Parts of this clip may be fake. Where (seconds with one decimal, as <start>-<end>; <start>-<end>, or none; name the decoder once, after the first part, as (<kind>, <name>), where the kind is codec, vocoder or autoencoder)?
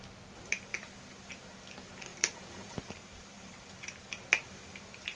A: 0.7-1.3 (vocoder, BigVGAN v2); 2.1-3.6